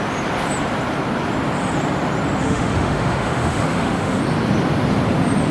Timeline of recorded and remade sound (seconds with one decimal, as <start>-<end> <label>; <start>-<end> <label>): 0.0-2.4 recorded; 2.4-4.2 remade; 4.2-5.5 recorded